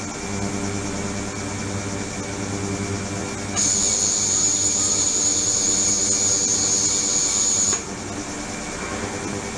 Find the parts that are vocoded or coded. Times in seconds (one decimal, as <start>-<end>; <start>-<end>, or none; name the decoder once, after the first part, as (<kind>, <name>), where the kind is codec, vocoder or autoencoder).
none